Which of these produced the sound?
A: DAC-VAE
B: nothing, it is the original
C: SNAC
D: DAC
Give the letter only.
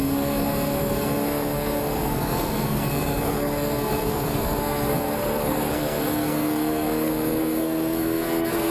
C